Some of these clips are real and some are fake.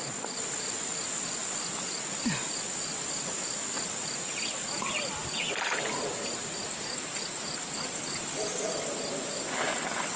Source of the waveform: real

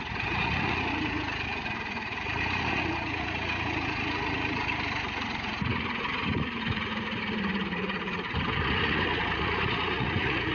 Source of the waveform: fake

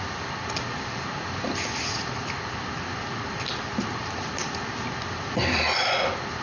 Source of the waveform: real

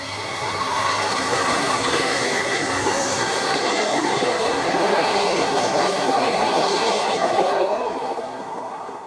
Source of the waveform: fake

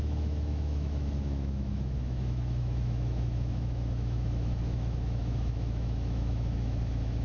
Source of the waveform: fake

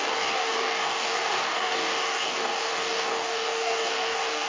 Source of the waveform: fake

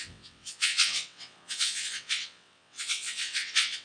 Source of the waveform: fake